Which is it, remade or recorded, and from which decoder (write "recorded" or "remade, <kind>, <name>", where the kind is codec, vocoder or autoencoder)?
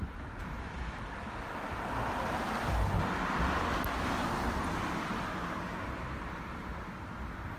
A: recorded